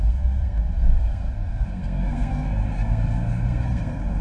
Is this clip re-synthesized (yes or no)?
yes